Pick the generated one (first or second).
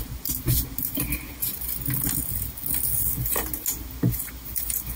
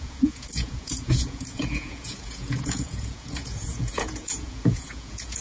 second